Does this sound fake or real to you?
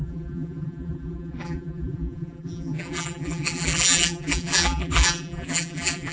fake